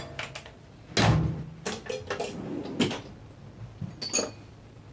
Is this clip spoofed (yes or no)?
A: no